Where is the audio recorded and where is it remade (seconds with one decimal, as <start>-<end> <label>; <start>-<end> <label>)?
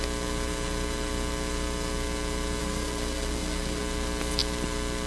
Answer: 0.0-2.6 recorded; 2.6-3.8 remade; 3.8-5.1 recorded